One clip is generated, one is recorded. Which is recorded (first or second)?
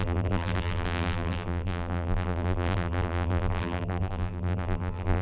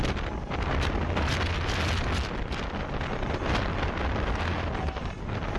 second